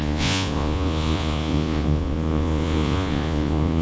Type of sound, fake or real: fake